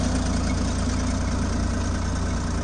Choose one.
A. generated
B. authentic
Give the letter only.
B